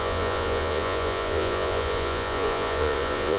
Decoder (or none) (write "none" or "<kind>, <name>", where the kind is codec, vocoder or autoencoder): vocoder, Vocos